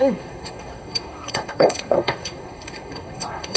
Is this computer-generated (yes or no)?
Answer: yes